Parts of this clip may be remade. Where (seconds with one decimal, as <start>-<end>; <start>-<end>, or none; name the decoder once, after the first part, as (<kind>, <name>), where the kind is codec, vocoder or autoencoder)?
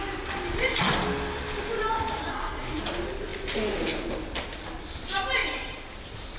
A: 2.3-2.8 (codec, SNAC)